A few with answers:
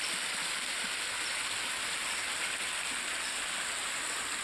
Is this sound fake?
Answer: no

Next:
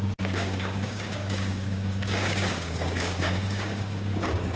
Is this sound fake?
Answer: yes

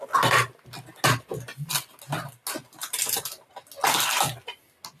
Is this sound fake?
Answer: no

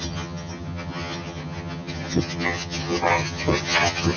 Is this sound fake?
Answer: yes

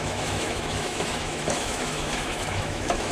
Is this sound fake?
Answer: yes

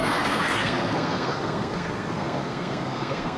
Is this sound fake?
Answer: yes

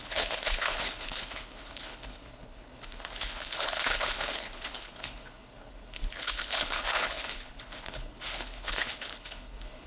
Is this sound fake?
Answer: yes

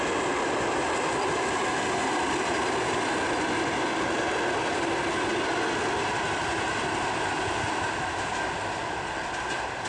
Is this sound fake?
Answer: no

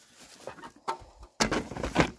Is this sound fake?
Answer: no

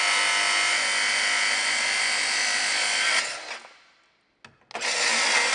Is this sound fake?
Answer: no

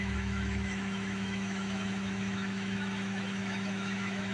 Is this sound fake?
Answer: yes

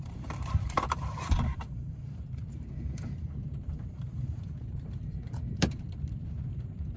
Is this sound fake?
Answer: yes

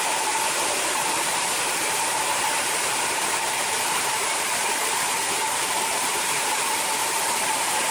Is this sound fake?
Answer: yes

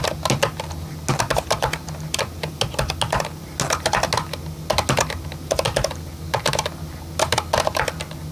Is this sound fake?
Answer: no